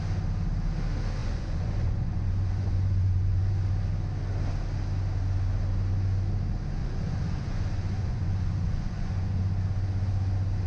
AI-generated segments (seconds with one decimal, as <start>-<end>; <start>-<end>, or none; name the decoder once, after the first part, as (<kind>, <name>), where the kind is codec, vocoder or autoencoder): 1.2-3.5 (vocoder, Vocos); 6.8-9.4